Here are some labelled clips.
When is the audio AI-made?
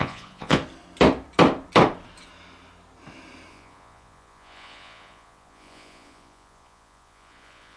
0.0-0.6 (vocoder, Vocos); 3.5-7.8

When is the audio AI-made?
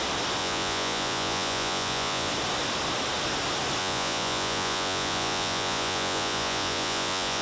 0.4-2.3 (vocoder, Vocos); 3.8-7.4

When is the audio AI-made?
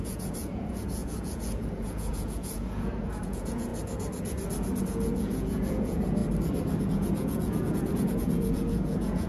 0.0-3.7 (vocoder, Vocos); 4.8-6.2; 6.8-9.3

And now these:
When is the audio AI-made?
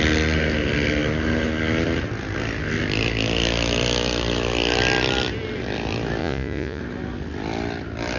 6.2-6.8 (vocoder, Vocos)